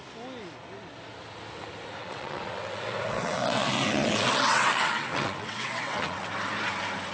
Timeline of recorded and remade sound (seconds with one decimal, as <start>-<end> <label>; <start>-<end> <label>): 0.0-2.0 recorded; 2.0-6.3 remade; 6.3-7.1 recorded